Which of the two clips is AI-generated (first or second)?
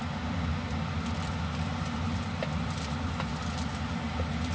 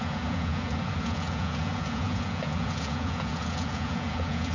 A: second